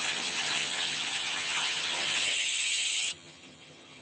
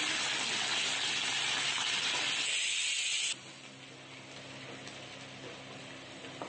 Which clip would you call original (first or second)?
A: second